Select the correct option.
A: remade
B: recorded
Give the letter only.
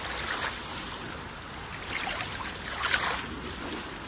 B